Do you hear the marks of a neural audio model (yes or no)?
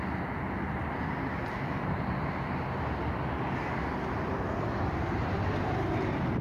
no